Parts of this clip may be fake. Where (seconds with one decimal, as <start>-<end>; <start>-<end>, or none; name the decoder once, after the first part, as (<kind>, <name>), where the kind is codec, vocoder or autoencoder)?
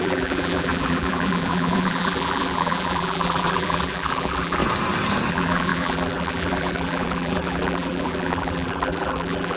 0.0-4.6 (vocoder, BigVGAN v2); 5.3-9.6